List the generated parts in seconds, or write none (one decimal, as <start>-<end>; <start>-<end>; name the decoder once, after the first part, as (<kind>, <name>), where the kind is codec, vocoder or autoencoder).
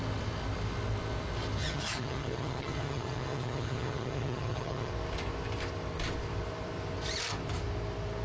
1.6-4.9 (vocoder, HiFi-GAN)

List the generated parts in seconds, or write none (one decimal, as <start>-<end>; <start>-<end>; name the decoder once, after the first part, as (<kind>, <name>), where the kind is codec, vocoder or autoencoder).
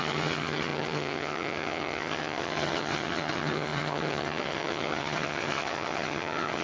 0.0-6.6 (vocoder, HiFi-GAN)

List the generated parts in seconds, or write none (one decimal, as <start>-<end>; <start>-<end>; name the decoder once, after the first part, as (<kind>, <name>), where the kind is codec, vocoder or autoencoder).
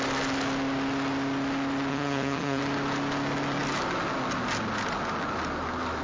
1.9-2.6 (vocoder, HiFi-GAN)